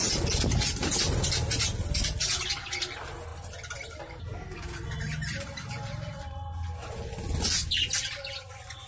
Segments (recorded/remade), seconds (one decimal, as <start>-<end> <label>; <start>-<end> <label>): 0.0-8.9 recorded